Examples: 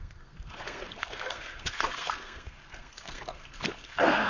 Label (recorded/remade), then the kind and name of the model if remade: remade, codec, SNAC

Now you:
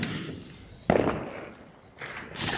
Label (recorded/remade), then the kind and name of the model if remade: recorded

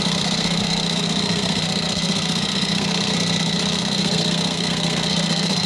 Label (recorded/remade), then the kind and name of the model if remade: remade, codec, SNAC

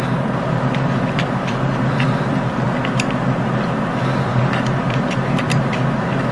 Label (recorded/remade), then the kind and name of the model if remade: remade, vocoder, BigVGAN v2